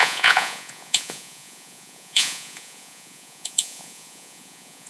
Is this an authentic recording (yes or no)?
no